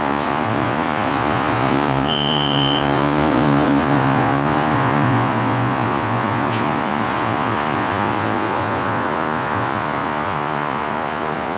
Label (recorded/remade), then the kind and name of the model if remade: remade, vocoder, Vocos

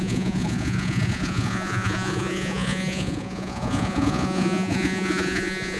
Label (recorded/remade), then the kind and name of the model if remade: remade, vocoder, Vocos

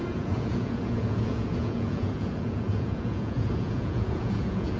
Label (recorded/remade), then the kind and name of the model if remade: remade, vocoder, Vocos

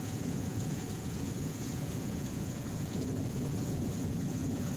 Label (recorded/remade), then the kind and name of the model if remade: remade, vocoder, Vocos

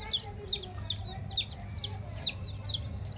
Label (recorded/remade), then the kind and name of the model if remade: recorded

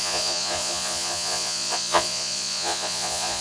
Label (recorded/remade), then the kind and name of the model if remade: remade, vocoder, Vocos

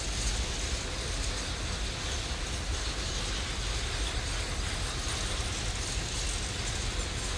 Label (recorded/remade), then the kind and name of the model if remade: recorded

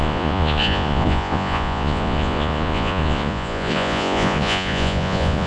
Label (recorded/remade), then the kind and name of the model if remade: remade, vocoder, Vocos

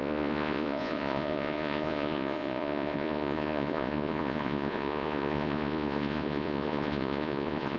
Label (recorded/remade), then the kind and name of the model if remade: remade, vocoder, Vocos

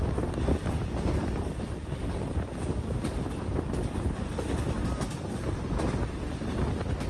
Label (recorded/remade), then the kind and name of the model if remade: recorded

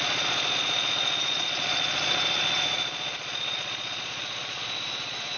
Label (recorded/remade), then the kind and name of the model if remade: remade, vocoder, Vocos